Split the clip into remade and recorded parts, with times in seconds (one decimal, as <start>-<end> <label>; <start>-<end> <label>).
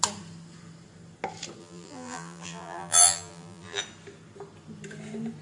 0.0-1.6 recorded; 1.6-3.8 remade; 3.8-5.4 recorded